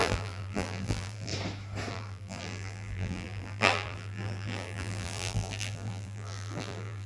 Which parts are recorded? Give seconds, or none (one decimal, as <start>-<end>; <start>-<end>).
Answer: 1.3-1.9